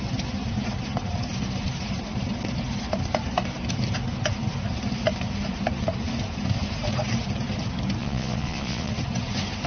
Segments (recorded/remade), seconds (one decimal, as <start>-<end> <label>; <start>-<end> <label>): 0.0-8.0 recorded; 8.0-8.9 remade; 8.9-9.7 recorded